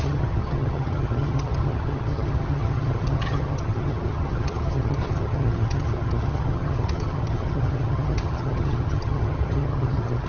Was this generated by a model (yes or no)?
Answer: yes